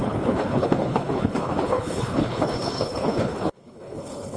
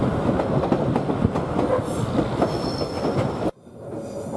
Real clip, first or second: second